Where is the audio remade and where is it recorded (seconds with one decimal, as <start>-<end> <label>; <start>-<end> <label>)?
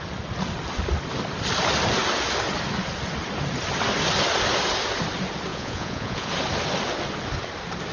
0.0-5.5 recorded; 5.5-6.3 remade; 6.3-7.9 recorded